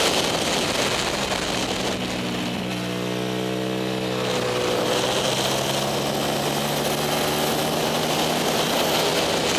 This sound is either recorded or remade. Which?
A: recorded